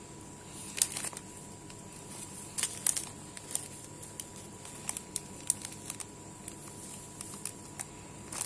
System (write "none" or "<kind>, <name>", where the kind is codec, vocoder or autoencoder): none